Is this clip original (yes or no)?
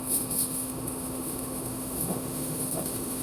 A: no